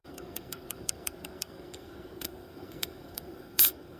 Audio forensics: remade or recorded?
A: remade